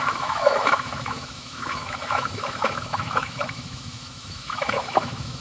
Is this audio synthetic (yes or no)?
yes